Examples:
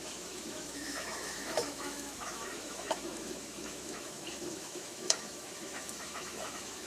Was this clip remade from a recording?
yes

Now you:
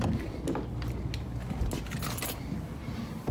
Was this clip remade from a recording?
no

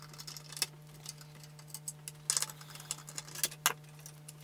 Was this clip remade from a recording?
no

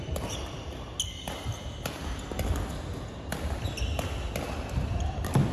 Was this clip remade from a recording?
no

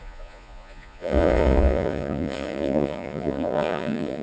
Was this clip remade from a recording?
yes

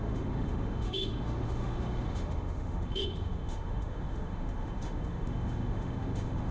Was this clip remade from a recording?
yes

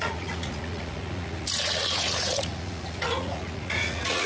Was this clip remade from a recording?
yes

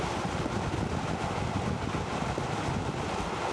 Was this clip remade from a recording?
no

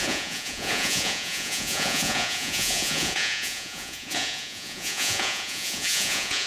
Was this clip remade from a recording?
yes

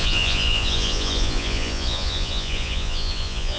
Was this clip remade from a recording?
yes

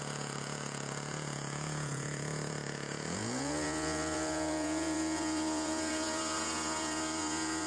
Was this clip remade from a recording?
yes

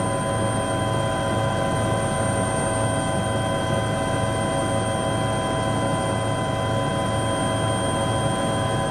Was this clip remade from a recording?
no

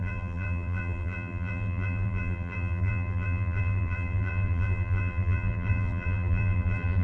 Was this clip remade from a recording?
yes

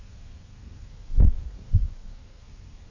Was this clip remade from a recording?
yes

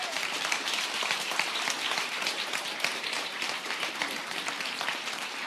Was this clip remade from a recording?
yes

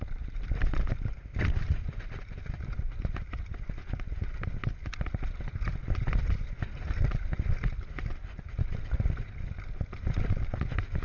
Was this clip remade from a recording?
no